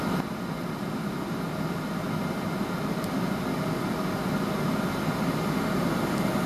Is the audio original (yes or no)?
yes